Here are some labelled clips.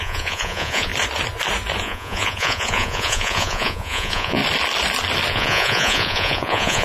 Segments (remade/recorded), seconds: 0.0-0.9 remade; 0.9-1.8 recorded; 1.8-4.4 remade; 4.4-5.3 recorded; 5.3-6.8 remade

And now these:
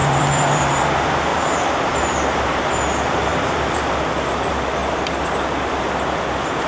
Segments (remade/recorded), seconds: 0.0-0.7 remade; 0.7-1.3 recorded; 1.3-2.6 remade; 2.6-3.3 recorded; 3.3-3.9 remade; 3.9-6.7 recorded

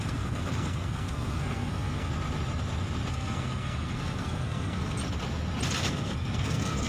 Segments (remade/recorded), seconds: 0.0-2.1 remade; 2.1-3.1 recorded; 3.1-5.0 remade; 5.0-5.8 recorded; 5.8-6.9 remade

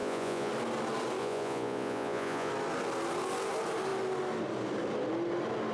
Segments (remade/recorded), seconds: 0.0-0.5 remade; 0.5-1.2 recorded; 1.2-2.5 remade; 2.5-5.7 recorded